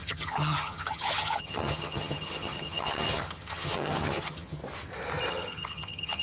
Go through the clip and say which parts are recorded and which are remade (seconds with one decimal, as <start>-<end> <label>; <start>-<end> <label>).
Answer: 0.0-4.6 remade; 4.6-5.3 recorded; 5.3-6.2 remade